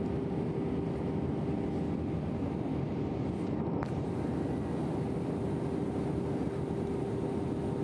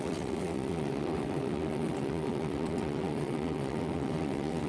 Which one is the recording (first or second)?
first